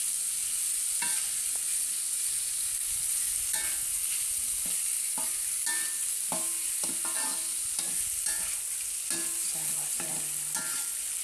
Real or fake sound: real